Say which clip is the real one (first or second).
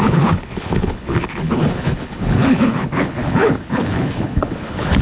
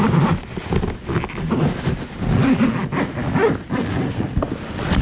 second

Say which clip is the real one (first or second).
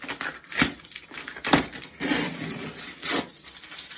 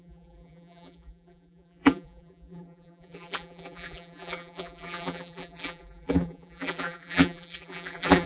first